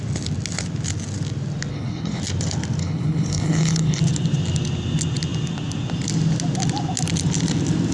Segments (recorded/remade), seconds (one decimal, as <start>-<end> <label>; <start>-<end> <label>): 0.0-1.7 recorded; 1.7-2.2 remade; 2.2-2.8 recorded; 2.8-4.0 remade; 4.0-7.9 recorded